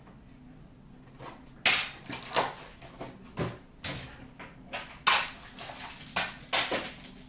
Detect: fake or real real